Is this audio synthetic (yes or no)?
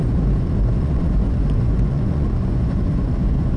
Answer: yes